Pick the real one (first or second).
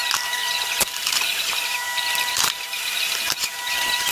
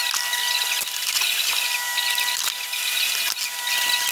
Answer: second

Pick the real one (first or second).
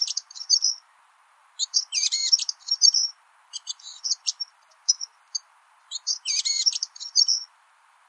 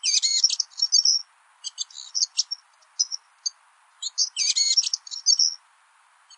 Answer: second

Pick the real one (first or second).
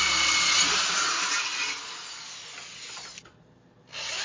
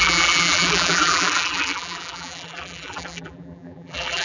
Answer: first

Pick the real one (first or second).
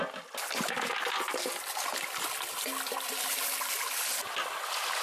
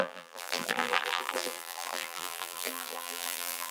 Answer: first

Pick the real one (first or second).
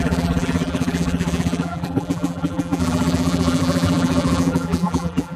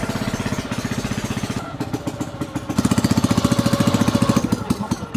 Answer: second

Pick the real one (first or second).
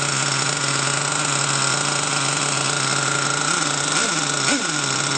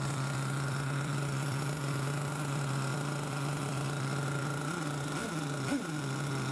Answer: first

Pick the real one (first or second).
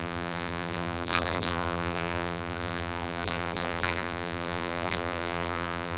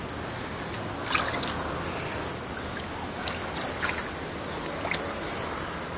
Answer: second